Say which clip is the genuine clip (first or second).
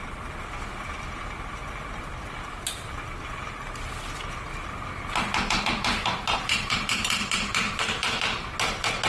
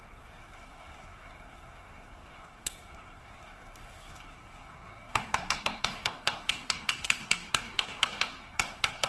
first